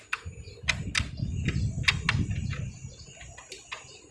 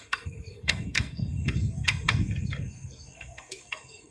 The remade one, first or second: second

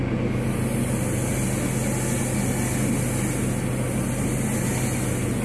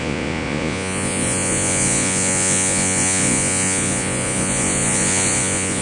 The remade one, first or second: second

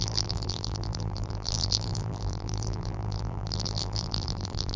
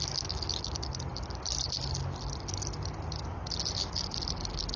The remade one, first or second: first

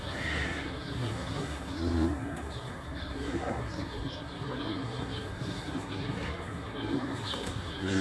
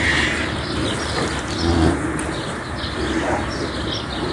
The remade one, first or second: first